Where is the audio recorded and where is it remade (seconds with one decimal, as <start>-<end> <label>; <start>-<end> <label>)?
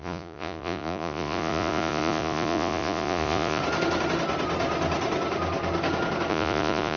0.0-3.6 remade; 3.6-6.3 recorded; 6.3-7.0 remade